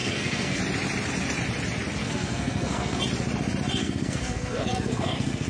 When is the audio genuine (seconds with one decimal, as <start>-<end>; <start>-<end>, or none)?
0.6-2.0; 3.0-3.8